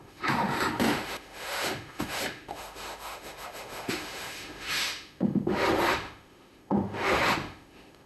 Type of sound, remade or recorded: remade